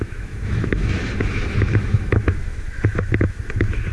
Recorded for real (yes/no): no